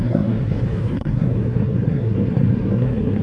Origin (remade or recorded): remade